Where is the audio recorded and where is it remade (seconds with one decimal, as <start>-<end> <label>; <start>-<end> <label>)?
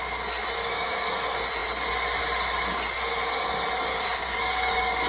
0.0-3.9 recorded; 3.9-5.1 remade